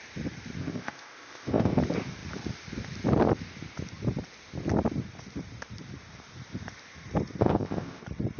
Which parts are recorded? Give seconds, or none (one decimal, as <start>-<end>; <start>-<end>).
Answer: 0.0-0.6; 1.8-7.4; 8.0-8.4